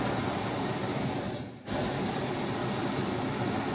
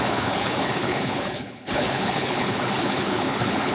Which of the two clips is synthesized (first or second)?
second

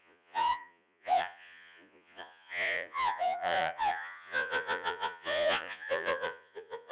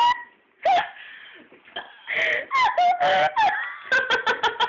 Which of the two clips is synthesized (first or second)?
first